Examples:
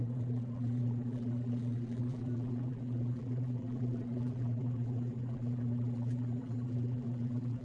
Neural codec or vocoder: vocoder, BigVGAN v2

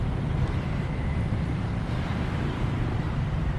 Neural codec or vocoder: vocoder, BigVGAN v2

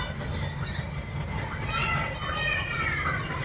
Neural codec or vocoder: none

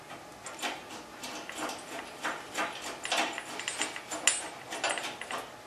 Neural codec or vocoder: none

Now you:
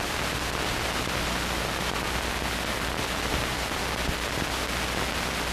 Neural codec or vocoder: none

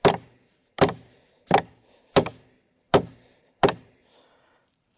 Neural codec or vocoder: vocoder, BigVGAN v2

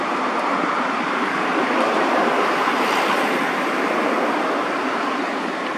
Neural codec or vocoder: vocoder, BigVGAN v2